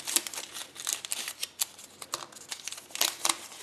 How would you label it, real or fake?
fake